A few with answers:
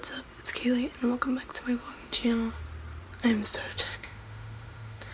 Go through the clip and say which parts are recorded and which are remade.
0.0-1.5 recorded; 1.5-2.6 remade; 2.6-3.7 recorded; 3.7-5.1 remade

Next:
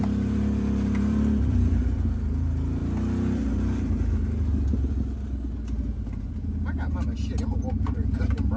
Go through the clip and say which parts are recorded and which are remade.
0.0-2.8 remade; 2.8-7.4 recorded; 7.4-8.6 remade

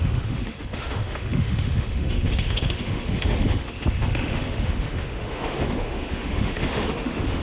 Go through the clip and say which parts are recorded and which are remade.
0.0-7.4 remade

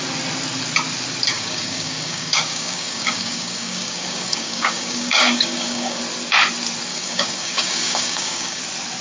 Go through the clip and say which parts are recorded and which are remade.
0.0-1.3 recorded; 1.3-6.0 remade; 6.0-6.9 recorded; 6.9-8.6 remade; 8.6-9.0 recorded

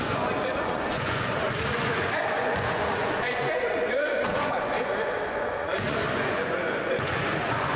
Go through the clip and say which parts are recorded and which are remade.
0.0-7.8 remade

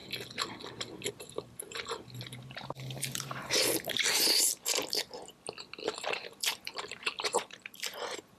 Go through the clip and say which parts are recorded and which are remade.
0.0-1.1 recorded; 1.1-4.5 remade; 4.5-6.3 recorded; 6.3-8.4 remade

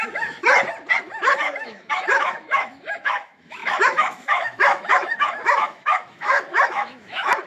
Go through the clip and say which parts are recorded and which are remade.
0.0-0.4 remade; 0.4-1.0 recorded; 1.0-7.5 remade

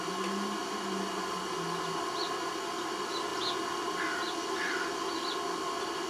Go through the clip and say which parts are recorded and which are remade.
0.0-6.1 recorded